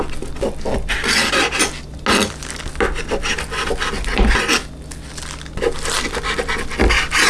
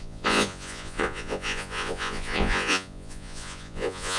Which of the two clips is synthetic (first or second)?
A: second